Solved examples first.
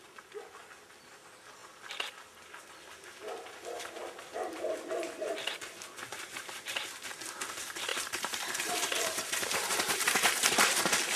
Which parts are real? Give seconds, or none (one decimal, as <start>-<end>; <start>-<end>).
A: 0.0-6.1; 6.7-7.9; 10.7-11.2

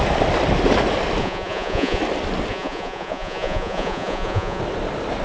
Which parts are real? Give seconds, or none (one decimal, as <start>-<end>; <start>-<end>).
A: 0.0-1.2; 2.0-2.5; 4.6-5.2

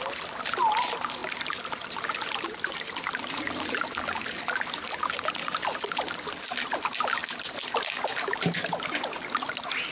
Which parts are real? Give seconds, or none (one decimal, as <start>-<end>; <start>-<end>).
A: 0.0-9.9

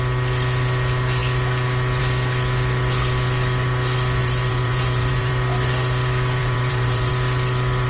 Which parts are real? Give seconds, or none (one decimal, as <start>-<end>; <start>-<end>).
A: 0.0-4.2; 5.3-6.4; 7.1-7.9

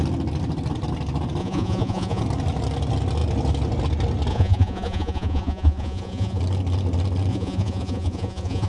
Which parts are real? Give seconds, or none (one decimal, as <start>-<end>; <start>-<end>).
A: 0.0-1.4; 2.2-4.3; 6.4-7.3

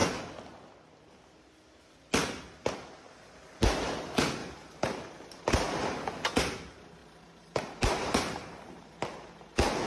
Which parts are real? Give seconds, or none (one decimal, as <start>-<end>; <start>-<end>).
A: 0.0-4.4; 5.1-7.0; 9.3-9.9